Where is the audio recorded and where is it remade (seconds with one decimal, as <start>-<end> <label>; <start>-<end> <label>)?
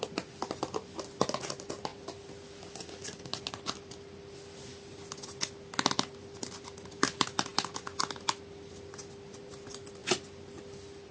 0.0-11.1 recorded